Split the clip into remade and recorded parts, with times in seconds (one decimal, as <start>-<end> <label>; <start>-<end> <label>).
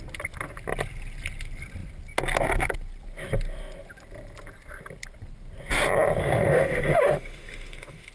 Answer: 0.0-6.2 recorded; 6.2-8.1 remade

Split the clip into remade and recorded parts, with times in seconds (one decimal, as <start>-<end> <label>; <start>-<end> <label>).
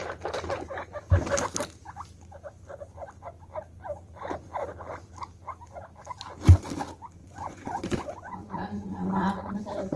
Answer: 0.0-7.2 recorded; 7.2-9.6 remade; 9.6-10.0 recorded